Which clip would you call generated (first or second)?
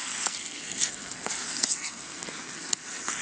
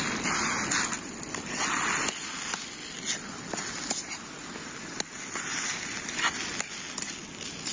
first